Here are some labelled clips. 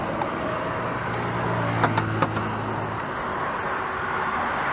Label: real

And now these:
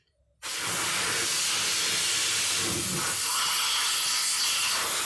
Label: real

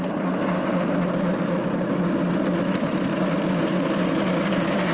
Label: real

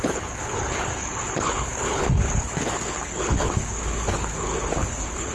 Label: fake